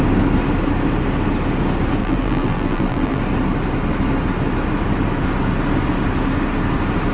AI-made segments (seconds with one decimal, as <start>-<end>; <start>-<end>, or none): 2.0-3.2